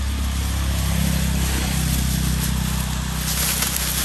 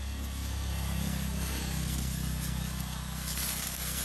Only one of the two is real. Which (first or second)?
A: first